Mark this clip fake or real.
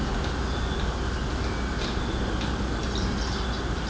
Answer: real